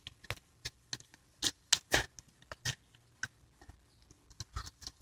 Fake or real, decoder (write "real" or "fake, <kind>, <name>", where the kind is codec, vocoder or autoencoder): real